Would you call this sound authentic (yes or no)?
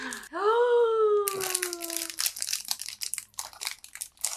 yes